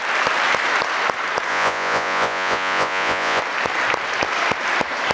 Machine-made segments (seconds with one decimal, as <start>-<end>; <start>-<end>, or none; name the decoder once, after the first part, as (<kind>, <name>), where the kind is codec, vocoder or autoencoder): 1.5-3.4 (vocoder, Vocos)